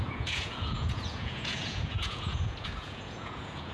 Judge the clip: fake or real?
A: fake